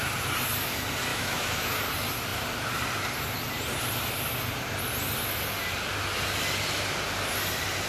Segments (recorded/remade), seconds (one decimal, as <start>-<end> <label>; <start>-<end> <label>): 0.0-1.1 recorded; 1.1-1.8 remade; 1.8-7.9 recorded